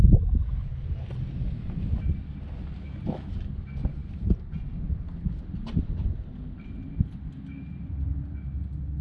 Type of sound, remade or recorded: recorded